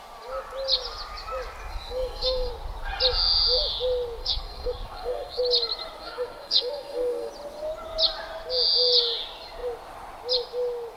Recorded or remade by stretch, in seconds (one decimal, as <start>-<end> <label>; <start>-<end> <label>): 0.0-1.7 recorded; 1.7-2.5 remade; 2.5-4.2 recorded; 4.2-5.4 remade; 5.4-6.0 recorded; 6.0-7.3 remade; 7.3-11.0 recorded

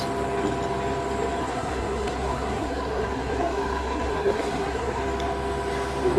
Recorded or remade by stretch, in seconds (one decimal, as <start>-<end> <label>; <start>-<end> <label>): 0.0-1.4 recorded; 1.4-5.0 remade; 5.0-6.2 recorded

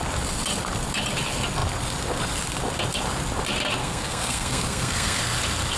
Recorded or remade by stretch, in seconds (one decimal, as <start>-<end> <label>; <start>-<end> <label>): 0.0-3.8 recorded; 3.8-5.2 remade; 5.2-5.8 recorded

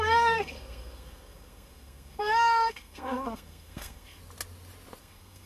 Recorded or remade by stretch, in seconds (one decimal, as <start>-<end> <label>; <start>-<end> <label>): 0.0-4.2 remade; 4.2-5.0 recorded; 5.0-5.5 remade

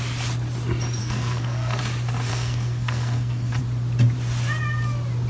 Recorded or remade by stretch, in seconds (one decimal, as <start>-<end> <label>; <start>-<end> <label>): 0.0-1.0 recorded; 1.0-1.8 remade; 1.8-2.3 recorded; 2.3-3.6 remade; 3.6-5.3 recorded

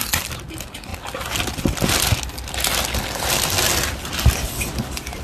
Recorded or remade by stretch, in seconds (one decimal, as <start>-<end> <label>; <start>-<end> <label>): 0.0-5.2 recorded